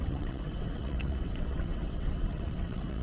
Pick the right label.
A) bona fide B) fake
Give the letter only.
B